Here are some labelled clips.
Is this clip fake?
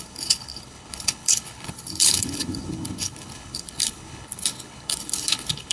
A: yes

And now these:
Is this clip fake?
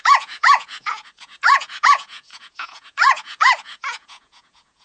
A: yes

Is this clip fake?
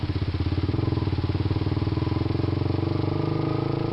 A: no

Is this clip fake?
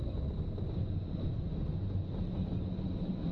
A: no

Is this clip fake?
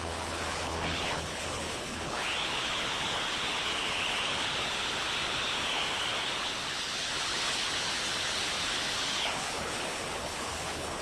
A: yes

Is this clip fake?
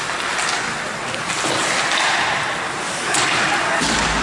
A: no